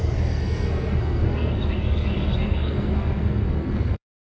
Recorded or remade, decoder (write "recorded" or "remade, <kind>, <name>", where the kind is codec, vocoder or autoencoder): remade, codec, SNAC